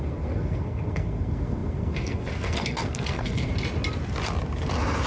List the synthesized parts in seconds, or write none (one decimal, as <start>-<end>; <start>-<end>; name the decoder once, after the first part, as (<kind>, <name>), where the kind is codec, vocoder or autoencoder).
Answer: 0.0-3.5 (codec, SNAC)